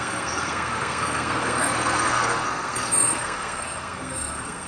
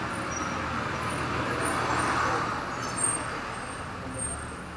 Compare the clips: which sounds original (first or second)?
second